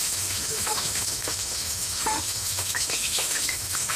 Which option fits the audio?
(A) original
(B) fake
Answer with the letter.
B